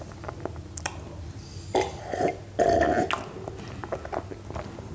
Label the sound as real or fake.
real